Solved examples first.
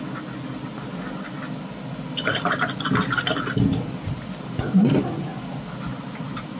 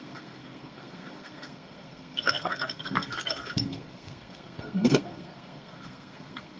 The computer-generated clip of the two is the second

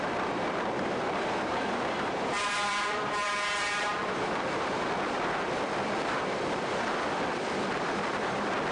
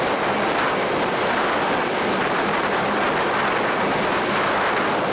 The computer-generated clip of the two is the first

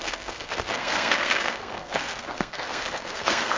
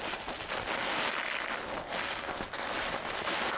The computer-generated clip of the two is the first